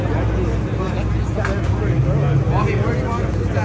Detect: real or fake real